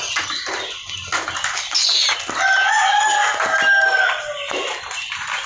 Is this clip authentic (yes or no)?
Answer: yes